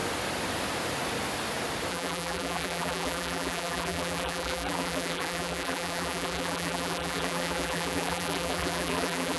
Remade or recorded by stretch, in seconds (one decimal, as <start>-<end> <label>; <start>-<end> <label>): 0.0-1.9 recorded; 1.9-9.4 remade